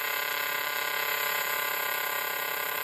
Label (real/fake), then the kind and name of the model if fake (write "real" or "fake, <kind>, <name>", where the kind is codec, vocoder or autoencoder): fake, vocoder, BigVGAN v2